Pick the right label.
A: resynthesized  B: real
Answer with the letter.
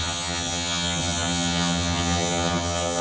A